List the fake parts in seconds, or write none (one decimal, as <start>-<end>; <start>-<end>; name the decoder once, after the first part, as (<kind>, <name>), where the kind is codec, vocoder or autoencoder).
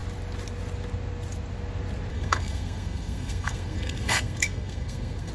2.1-5.3 (codec, SNAC)